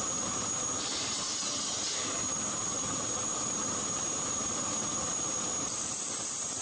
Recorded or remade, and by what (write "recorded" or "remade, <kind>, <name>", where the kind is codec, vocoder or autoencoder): recorded